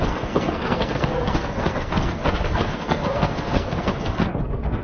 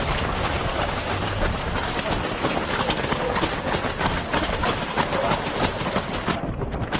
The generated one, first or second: first